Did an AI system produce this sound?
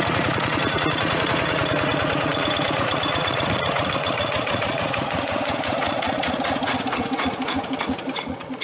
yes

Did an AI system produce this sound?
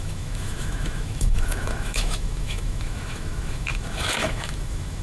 yes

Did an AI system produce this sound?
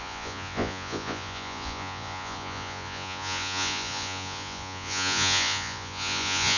yes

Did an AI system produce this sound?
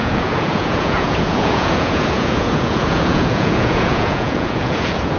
yes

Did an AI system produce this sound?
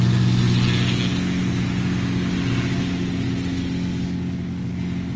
no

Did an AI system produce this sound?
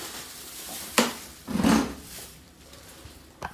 yes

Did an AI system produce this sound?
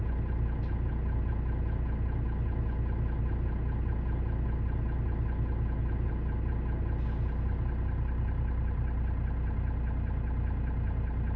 no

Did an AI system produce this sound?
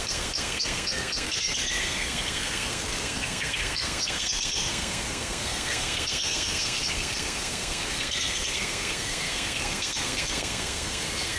yes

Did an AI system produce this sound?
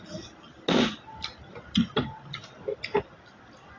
no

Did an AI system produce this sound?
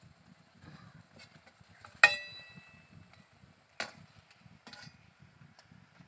no